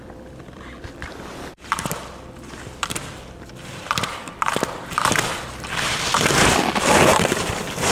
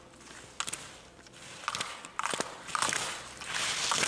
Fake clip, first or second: first